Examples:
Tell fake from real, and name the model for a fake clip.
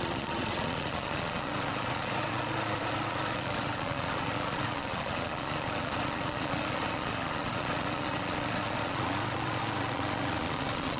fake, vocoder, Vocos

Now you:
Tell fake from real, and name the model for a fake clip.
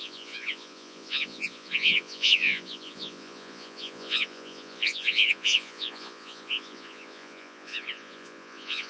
fake, vocoder, Vocos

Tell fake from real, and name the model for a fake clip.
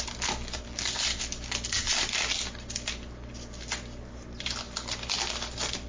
real